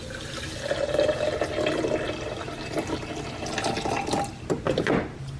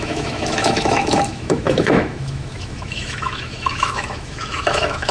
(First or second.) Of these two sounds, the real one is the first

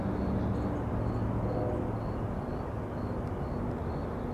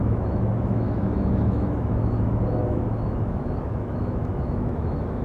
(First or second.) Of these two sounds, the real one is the first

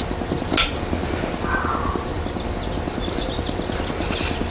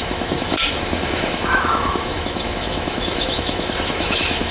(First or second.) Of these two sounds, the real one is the first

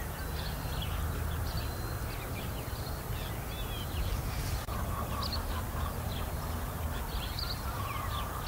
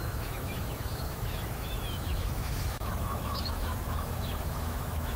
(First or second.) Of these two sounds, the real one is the first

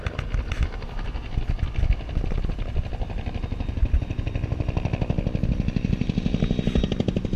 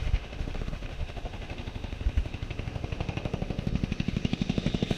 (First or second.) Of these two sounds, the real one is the first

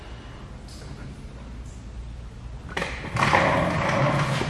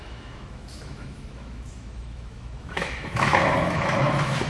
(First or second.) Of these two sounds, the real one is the first